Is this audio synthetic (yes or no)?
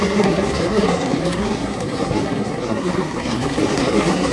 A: yes